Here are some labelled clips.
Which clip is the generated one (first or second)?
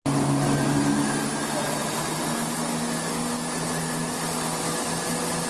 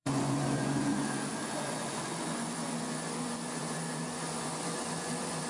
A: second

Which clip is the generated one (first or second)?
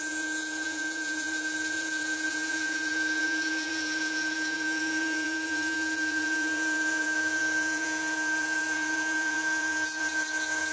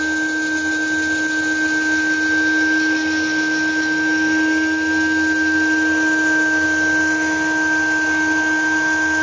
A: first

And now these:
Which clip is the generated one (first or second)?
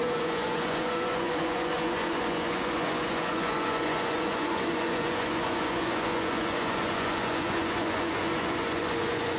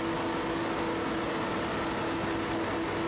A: first